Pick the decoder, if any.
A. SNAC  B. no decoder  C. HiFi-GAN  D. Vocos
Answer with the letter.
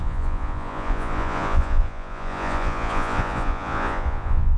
D